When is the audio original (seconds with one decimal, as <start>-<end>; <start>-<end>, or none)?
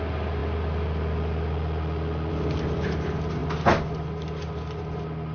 0.0-5.3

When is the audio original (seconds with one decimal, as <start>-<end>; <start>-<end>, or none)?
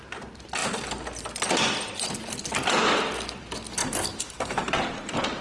0.0-3.8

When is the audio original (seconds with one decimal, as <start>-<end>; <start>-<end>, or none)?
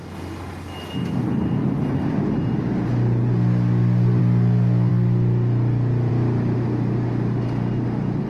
0.0-8.3